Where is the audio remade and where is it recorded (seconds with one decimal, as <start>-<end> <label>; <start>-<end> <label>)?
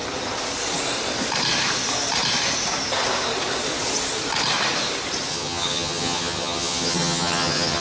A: 0.0-5.3 recorded; 5.3-7.8 remade